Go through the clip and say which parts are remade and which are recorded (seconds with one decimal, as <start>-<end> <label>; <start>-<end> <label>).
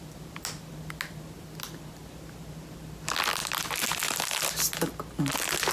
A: 0.0-5.7 recorded